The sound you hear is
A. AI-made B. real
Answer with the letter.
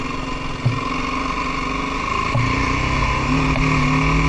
B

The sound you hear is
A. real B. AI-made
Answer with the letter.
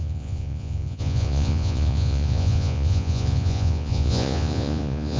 B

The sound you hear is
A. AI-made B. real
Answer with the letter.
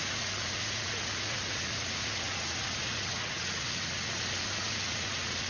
A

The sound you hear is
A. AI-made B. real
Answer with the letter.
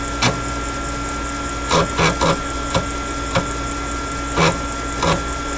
B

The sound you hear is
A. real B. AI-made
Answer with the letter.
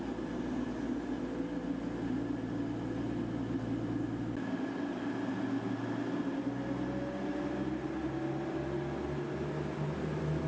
A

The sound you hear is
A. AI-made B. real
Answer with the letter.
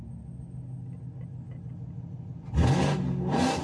B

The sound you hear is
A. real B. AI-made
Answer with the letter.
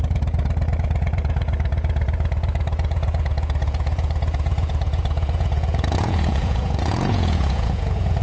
B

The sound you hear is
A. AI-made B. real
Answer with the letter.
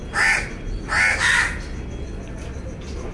B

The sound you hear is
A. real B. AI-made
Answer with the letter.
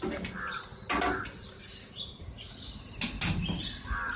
A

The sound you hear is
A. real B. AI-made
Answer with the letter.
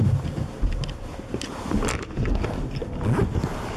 A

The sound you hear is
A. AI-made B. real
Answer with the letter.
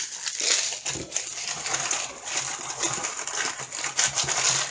B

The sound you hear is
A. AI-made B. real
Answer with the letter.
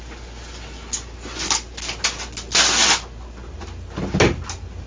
B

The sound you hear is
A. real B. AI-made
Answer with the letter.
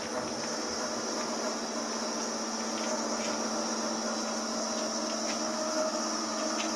A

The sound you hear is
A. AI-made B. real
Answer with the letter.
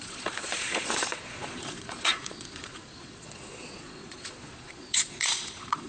A